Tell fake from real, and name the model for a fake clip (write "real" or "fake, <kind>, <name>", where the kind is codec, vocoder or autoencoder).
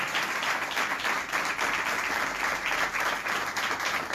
real